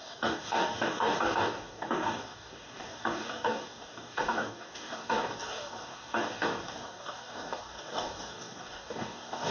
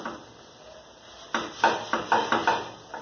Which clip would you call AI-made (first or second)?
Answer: first